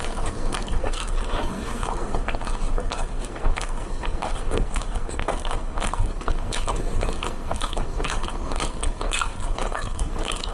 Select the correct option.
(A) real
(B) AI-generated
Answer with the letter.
B